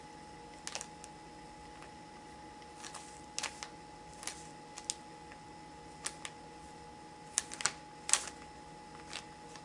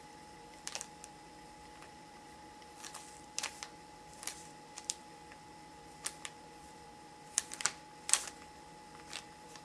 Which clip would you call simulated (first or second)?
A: second